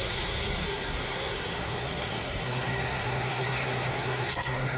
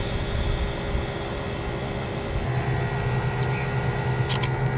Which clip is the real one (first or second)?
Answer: second